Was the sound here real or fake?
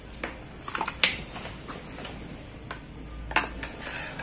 real